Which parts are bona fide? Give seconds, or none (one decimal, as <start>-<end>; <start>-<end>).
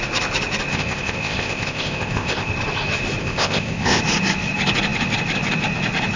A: 0.0-0.7; 2.5-3.2; 4.0-6.2